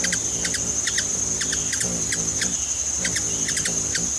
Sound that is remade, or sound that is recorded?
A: recorded